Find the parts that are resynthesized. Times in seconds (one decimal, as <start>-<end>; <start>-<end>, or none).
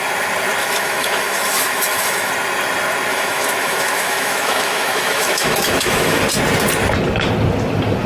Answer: 0.6-2.3; 3.1-6.2